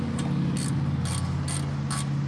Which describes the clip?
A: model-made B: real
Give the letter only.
B